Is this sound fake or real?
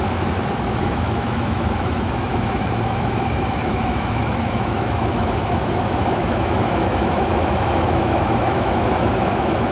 fake